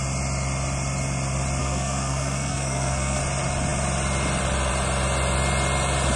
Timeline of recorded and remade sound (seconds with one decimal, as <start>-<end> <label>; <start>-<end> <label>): 0.0-1.6 recorded; 1.6-3.2 remade; 3.2-6.2 recorded

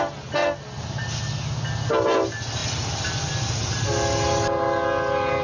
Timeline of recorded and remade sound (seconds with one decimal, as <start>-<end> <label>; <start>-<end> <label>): 0.0-5.4 recorded